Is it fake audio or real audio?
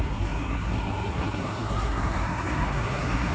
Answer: fake